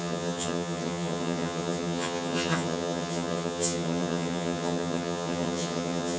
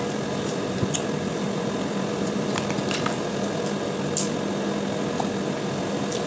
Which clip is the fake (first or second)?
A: first